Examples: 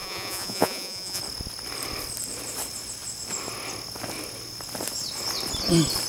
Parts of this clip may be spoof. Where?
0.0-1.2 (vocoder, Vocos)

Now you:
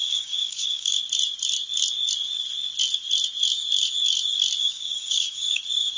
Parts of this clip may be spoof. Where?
0.0-1.0 (codec, DAC); 4.6-5.6